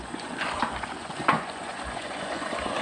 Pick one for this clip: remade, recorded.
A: remade